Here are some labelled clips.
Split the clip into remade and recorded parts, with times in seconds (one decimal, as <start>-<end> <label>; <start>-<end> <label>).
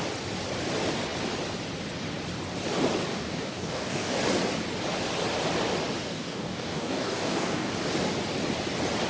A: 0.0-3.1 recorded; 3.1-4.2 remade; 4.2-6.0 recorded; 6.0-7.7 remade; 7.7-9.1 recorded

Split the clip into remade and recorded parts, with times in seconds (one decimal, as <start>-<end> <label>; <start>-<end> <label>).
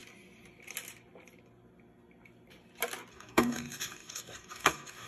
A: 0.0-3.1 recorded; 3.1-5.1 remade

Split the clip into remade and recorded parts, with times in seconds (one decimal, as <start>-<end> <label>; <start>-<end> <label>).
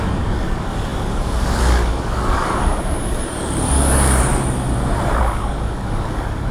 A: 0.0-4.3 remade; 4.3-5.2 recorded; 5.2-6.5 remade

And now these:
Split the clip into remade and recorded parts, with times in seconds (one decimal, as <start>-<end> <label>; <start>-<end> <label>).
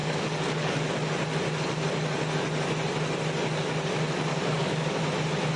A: 0.0-0.9 remade; 0.9-4.3 recorded; 4.3-5.0 remade; 5.0-5.6 recorded